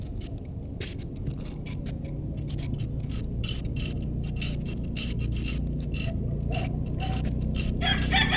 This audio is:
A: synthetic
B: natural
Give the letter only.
B